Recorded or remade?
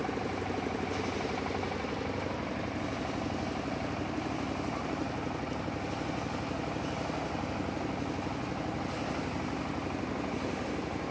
recorded